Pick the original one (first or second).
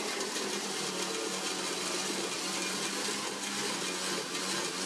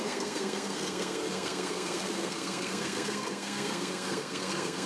first